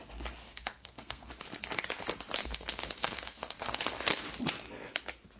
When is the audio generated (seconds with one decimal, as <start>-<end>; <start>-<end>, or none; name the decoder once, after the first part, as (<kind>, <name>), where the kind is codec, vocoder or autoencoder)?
0.4-1.3 (codec, SNAC); 2.4-4.2